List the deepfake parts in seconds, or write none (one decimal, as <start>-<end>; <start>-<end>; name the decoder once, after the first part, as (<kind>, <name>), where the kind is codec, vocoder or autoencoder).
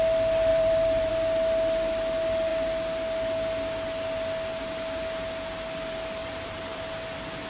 0.5-1.1 (vocoder, BigVGAN v2); 6.2-6.8